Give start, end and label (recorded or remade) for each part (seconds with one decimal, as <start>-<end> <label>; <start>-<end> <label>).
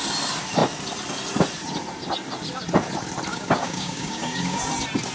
0.0-3.3 recorded; 3.3-4.6 remade; 4.6-5.1 recorded